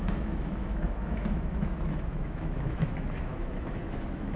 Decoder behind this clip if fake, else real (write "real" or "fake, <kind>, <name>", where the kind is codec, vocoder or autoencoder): fake, autoencoder, DAC-VAE